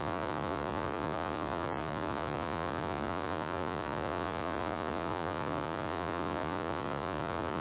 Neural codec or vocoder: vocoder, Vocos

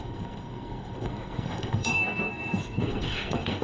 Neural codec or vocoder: codec, SNAC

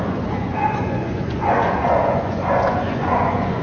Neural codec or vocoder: vocoder, Vocos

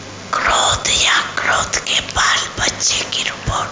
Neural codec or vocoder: none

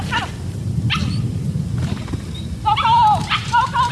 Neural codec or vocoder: none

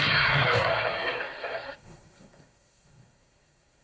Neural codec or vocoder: codec, SNAC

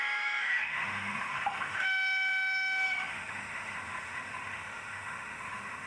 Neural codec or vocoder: autoencoder, DAC-VAE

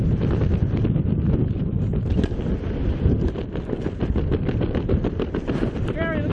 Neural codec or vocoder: none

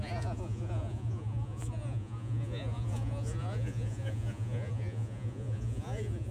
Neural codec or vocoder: vocoder, Vocos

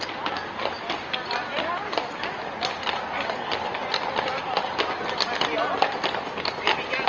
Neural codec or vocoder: none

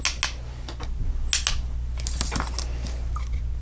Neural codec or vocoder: none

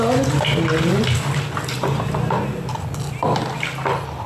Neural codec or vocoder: none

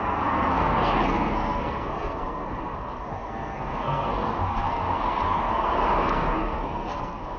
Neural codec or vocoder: codec, SNAC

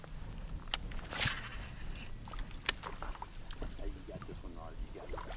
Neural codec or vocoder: none